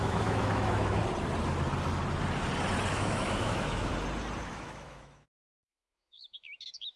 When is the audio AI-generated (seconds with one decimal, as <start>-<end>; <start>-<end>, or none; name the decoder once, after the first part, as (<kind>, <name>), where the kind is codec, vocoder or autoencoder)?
0.0-1.0 (autoencoder, DAC-VAE); 2.9-3.9; 4.5-7.0